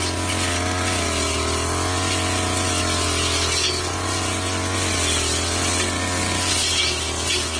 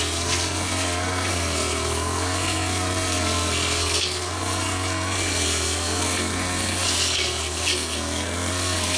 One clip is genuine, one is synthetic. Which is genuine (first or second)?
first